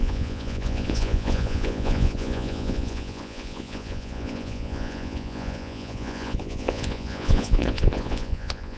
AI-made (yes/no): yes